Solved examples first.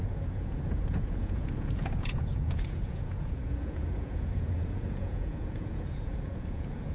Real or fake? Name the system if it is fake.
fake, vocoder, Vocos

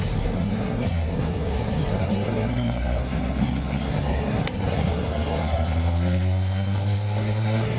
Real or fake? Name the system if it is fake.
fake, codec, SNAC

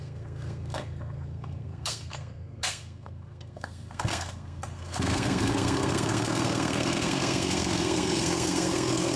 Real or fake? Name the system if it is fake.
fake, codec, SNAC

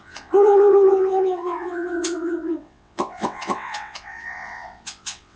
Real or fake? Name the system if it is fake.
fake, vocoder, WaveNeXt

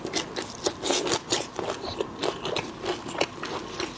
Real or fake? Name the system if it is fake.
real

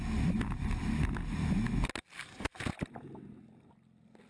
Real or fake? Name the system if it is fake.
real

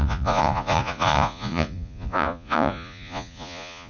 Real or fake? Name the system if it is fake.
fake, vocoder, Vocos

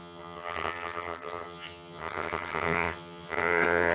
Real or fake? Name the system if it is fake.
fake, vocoder, HiFi-GAN